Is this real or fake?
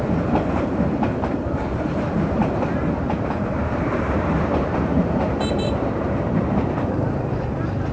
fake